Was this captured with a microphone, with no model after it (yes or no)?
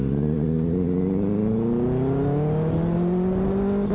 yes